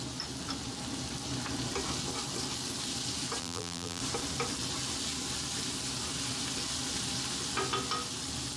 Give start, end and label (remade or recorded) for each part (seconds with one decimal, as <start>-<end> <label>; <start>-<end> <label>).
0.0-3.4 recorded; 3.4-4.0 remade; 4.0-8.6 recorded